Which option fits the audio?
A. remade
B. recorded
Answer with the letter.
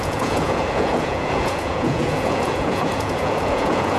A